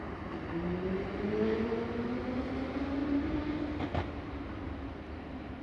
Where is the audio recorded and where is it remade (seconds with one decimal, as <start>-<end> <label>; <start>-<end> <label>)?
0.0-5.6 recorded